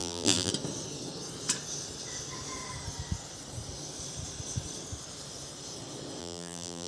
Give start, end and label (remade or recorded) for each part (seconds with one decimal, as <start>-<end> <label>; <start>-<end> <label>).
0.0-0.5 remade; 0.5-6.2 recorded; 6.2-6.9 remade